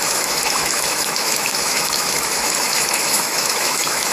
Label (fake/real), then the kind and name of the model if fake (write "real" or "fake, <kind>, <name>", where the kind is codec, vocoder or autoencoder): fake, autoencoder, DAC-VAE